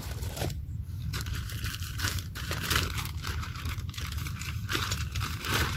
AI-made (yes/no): yes